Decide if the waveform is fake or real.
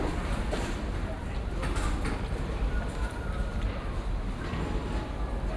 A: fake